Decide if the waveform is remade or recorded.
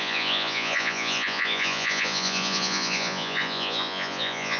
remade